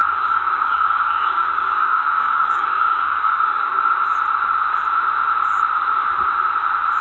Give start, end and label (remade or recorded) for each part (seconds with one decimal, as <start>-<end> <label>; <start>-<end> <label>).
0.0-3.7 remade; 3.7-7.0 recorded